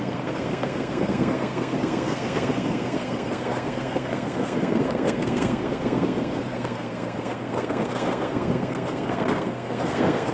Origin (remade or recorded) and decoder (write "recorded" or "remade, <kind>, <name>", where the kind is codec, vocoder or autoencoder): remade, codec, SNAC